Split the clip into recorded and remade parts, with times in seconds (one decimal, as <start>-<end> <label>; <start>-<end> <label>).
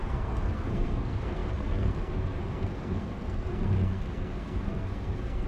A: 0.0-5.5 remade